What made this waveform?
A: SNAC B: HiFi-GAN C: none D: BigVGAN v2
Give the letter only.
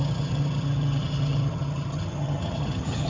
B